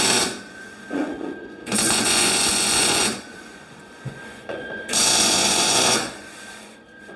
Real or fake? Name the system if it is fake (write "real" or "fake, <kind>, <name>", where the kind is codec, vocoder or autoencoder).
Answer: fake, vocoder, Vocos